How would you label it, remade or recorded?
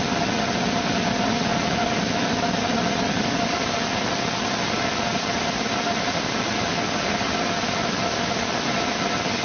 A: recorded